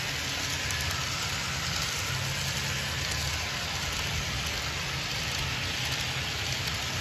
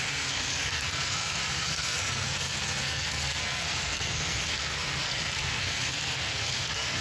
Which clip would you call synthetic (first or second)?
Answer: second